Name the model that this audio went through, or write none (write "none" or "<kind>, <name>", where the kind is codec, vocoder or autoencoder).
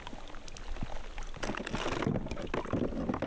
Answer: none